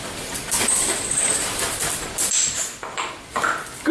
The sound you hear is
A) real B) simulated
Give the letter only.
B